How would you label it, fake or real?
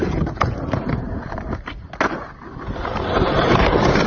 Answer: fake